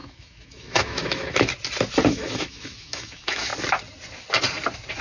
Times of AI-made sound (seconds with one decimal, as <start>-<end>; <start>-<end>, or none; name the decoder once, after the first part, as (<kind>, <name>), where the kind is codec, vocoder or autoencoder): 0.0-1.5 (autoencoder, DAC-VAE); 2.1-3.5